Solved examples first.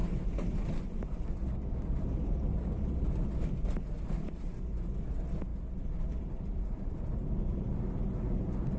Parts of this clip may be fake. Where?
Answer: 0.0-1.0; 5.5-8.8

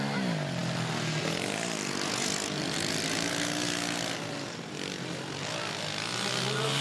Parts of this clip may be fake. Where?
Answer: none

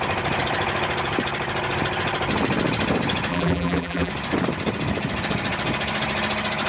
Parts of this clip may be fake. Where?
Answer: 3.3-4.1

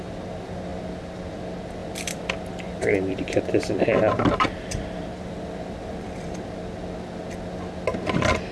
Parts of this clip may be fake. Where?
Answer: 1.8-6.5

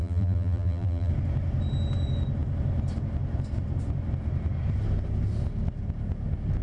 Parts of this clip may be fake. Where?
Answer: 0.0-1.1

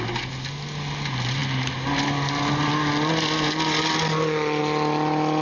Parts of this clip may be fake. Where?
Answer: none